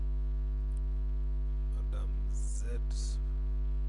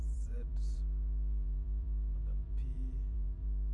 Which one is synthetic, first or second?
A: second